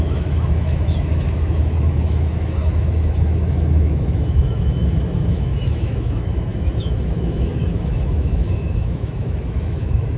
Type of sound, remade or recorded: remade